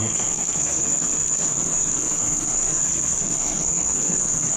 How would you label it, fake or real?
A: fake